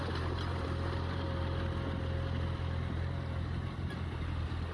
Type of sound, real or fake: real